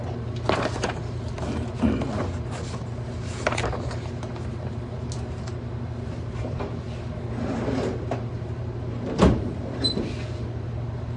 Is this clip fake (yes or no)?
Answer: no